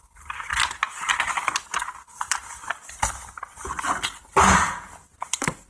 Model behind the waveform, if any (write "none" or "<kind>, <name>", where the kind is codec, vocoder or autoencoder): none